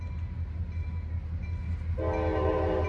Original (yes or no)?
yes